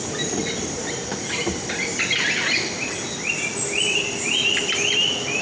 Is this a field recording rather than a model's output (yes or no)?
yes